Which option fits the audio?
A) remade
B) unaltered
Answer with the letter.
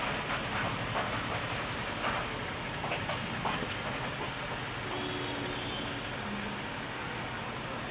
B